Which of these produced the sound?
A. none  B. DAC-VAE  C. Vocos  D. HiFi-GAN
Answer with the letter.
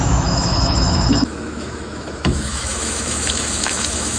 B